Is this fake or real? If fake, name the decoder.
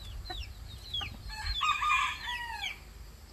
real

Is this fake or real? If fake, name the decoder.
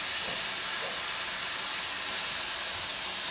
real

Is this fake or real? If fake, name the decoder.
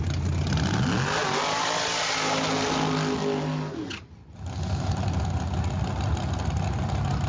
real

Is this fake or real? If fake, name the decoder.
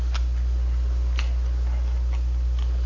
fake, vocoder, BigVGAN v2